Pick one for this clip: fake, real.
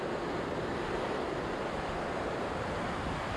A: real